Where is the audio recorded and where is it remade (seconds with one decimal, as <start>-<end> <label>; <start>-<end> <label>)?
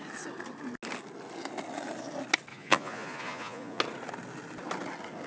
0.0-2.5 recorded; 2.5-3.8 remade; 3.8-5.3 recorded